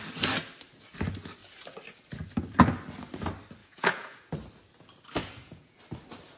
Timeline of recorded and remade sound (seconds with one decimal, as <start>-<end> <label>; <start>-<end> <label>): 0.0-3.6 recorded; 3.6-4.3 remade; 4.3-5.2 recorded; 5.2-5.8 remade; 5.8-6.4 recorded